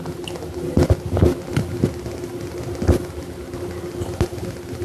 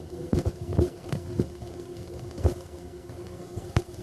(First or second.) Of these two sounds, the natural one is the first